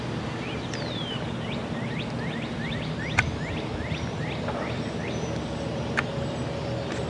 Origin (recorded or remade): recorded